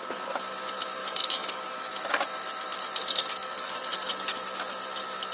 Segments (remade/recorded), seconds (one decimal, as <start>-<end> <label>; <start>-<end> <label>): 0.0-1.0 recorded; 1.0-1.9 remade; 1.9-3.0 recorded; 3.0-4.1 remade; 4.1-5.3 recorded